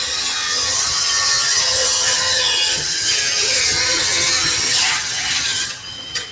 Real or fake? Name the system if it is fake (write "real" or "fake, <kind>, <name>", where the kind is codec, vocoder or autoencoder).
fake, vocoder, HiFi-GAN